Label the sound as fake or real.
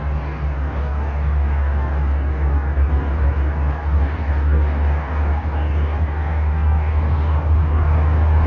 fake